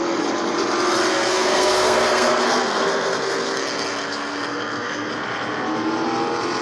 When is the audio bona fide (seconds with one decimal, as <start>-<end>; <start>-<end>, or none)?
0.0-1.1; 5.1-6.6